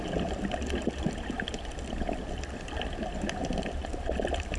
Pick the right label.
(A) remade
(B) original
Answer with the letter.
B